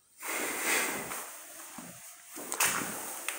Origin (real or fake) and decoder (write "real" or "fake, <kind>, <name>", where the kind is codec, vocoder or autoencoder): real